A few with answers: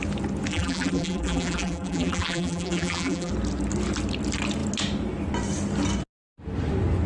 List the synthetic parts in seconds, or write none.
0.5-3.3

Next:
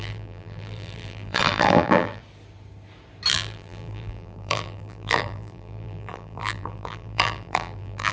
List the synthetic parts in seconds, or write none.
0.0-2.2; 3.3-8.1